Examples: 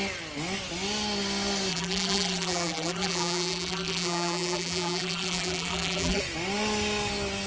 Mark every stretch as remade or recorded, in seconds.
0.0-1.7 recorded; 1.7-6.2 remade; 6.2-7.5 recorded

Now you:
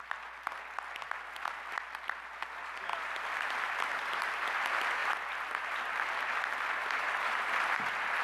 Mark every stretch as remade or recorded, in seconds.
0.0-8.2 recorded

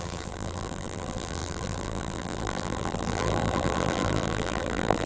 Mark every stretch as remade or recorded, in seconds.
0.0-5.1 remade

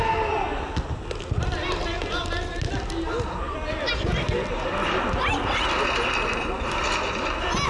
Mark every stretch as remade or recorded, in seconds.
0.0-7.7 recorded

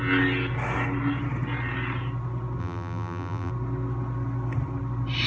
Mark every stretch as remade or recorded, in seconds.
0.0-2.6 recorded; 2.6-3.5 remade; 3.5-5.3 recorded

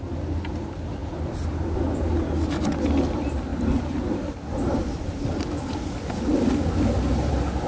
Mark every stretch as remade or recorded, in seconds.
0.0-1.0 recorded; 1.0-2.3 remade; 2.3-7.7 recorded

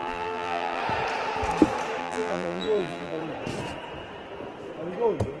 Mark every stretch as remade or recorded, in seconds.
0.0-0.8 remade; 0.8-2.0 recorded; 2.0-3.2 remade; 3.2-5.4 recorded

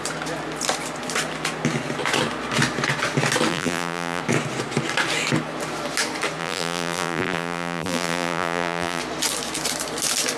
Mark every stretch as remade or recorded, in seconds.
0.0-3.5 recorded; 3.5-4.2 remade; 4.2-6.4 recorded; 6.4-9.0 remade; 9.0-10.4 recorded